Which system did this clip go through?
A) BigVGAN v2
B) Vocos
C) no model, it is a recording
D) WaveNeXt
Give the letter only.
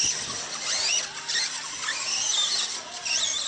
C